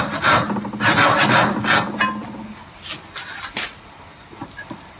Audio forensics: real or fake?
real